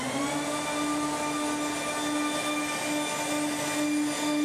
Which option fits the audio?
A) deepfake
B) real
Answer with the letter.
B